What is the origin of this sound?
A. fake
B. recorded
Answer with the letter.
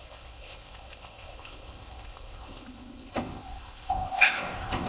A